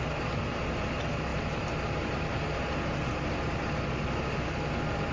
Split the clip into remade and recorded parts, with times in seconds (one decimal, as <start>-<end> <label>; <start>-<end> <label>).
0.0-5.1 recorded